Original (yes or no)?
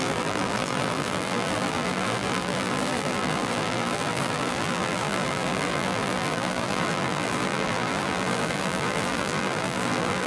no